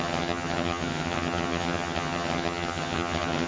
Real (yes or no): no